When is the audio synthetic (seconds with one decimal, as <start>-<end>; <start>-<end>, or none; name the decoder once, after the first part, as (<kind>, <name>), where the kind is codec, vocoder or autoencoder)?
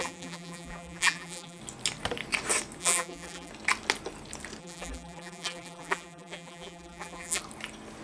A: 0.0-1.6 (vocoder, BigVGAN v2); 2.8-3.5; 4.6-7.4